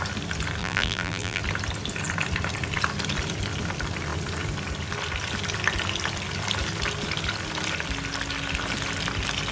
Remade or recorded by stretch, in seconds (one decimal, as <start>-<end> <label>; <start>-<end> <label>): 0.0-0.6 recorded; 0.6-1.4 remade; 1.4-9.5 recorded